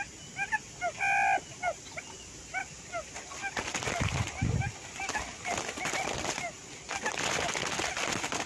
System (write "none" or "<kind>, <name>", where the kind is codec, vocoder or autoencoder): none